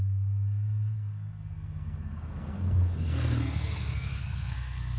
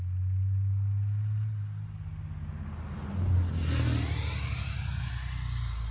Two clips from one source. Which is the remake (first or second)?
first